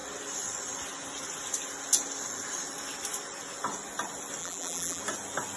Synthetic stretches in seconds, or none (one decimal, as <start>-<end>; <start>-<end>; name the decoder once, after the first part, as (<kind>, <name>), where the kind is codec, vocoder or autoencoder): 4.4-5.0 (vocoder, BigVGAN v2)